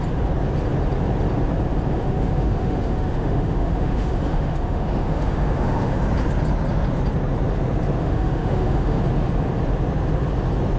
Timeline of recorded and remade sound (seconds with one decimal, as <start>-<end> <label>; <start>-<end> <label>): 0.0-2.0 recorded; 2.0-6.0 remade; 6.0-8.0 recorded; 8.0-9.0 remade; 9.0-10.8 recorded